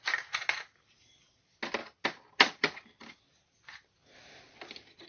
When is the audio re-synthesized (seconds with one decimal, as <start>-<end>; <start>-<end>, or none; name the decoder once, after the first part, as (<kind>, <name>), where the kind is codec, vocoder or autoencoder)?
none